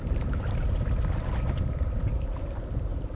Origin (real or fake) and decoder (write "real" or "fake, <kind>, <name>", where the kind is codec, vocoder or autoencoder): real